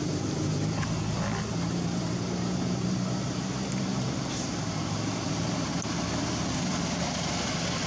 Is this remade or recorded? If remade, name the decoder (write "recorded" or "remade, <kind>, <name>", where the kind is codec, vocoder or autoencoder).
remade, vocoder, BigVGAN v2